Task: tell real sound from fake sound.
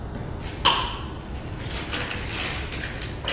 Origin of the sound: real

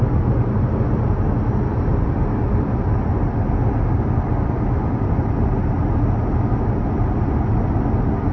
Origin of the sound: real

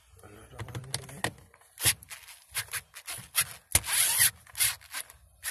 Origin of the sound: real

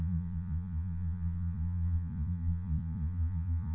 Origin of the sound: fake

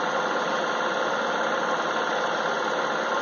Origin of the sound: real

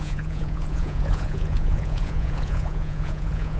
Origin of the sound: fake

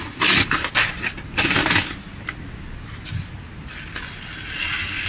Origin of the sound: real